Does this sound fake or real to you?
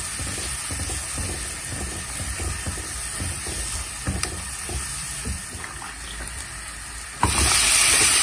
real